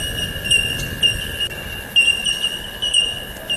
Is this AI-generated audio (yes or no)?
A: no